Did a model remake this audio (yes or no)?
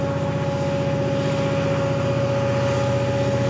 no